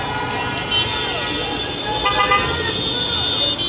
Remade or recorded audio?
recorded